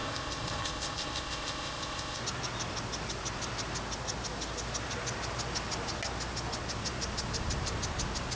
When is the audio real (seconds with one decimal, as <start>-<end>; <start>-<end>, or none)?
2.2-8.4